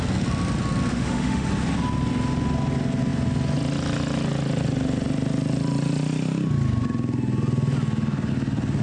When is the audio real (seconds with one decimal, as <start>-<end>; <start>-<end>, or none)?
0.0-0.9; 1.5-8.8